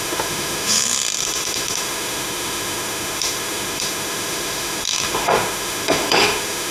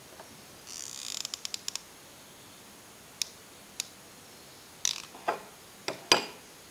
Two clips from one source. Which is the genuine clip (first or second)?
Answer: second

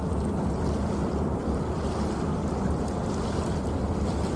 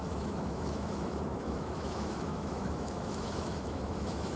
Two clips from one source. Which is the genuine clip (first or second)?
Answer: first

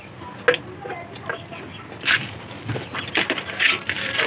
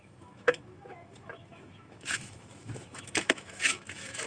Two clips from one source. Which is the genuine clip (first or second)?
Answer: first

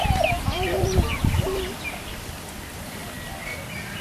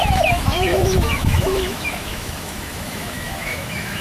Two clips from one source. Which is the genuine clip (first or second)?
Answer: first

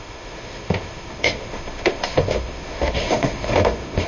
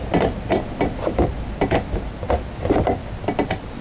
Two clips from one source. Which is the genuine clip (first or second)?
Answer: second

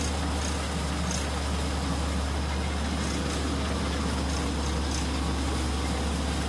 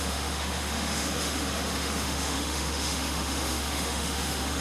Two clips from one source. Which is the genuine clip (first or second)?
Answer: first